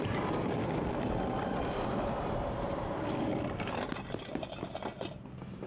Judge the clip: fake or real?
real